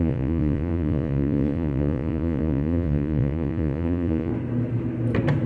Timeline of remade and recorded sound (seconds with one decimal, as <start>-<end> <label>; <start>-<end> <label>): 0.0-4.3 remade; 4.3-5.5 recorded